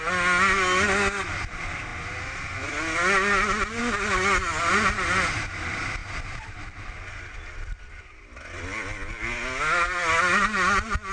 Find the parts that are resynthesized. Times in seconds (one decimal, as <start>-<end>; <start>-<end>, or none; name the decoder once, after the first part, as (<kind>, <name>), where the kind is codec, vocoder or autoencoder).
none